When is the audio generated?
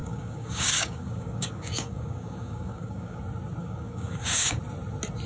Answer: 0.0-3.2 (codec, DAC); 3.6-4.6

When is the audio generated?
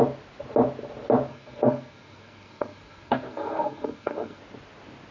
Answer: 1.3-4.4 (codec, SNAC)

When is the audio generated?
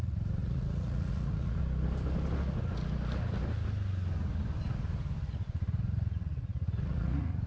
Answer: 0.0-1.6 (vocoder, Vocos); 5.3-7.5